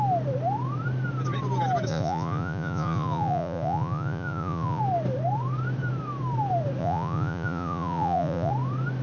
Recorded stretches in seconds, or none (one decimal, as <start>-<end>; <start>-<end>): 0.0-1.9; 4.8-6.8; 8.5-9.0